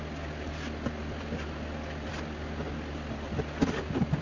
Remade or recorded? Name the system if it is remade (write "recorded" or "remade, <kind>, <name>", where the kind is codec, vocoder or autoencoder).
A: recorded